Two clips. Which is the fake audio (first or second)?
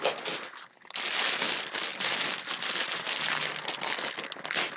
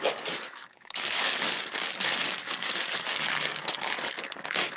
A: second